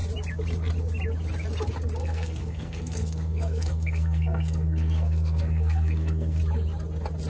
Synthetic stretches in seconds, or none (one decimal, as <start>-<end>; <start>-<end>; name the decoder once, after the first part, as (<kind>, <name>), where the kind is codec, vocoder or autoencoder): 2.0-6.4 (codec, SNAC)